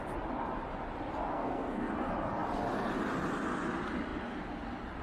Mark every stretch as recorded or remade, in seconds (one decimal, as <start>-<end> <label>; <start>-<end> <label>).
0.0-1.3 recorded; 1.3-1.9 remade; 1.9-5.0 recorded